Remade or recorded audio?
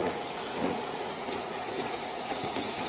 remade